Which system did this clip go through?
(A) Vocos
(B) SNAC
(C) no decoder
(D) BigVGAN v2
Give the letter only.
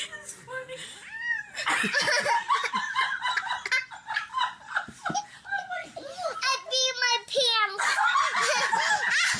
C